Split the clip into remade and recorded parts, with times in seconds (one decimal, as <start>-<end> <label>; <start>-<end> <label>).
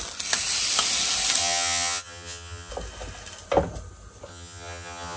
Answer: 0.0-1.4 recorded; 1.4-2.7 remade; 2.7-4.3 recorded; 4.3-5.2 remade